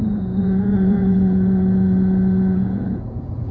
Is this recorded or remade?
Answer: remade